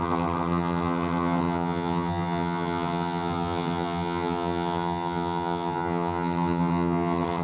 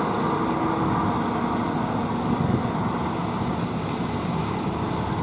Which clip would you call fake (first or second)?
first